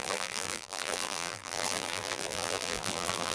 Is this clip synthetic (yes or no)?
yes